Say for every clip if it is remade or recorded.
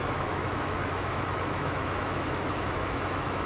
remade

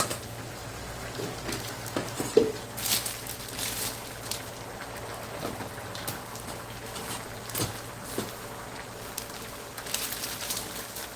recorded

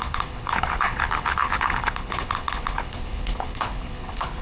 remade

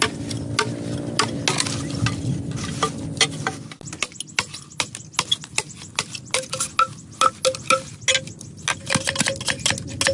recorded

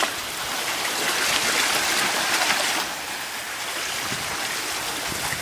recorded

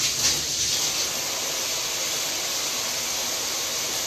recorded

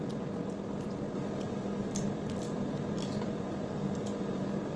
recorded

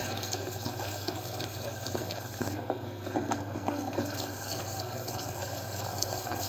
remade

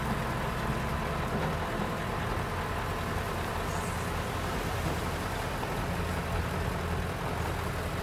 recorded